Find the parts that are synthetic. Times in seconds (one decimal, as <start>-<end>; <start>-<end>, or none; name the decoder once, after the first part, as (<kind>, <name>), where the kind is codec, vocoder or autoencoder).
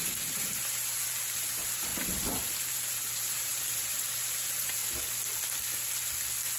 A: 0.0-1.9 (vocoder, BigVGAN v2); 2.7-4.8